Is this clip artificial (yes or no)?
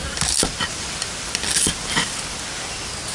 yes